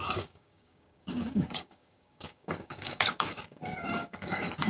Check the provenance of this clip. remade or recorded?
remade